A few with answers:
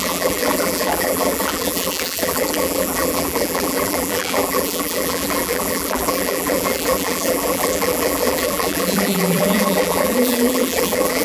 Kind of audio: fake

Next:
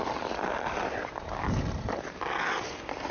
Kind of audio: real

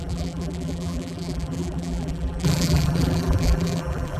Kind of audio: fake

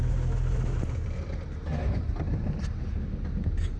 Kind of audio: real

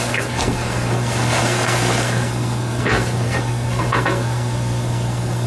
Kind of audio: fake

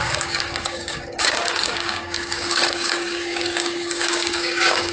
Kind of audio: fake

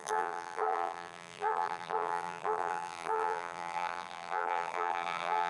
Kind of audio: fake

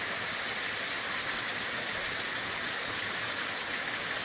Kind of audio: real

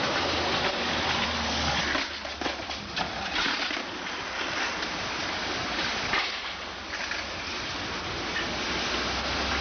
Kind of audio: real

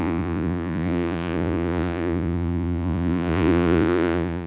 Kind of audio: fake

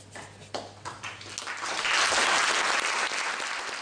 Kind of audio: real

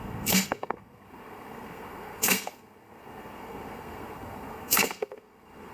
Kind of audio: fake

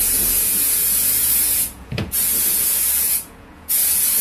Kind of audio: fake